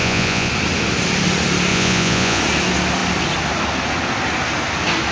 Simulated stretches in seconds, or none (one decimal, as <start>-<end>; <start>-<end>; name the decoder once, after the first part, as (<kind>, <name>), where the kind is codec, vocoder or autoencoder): 0.0-0.5 (vocoder, Vocos); 1.7-2.4